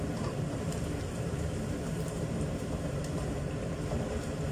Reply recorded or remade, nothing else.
remade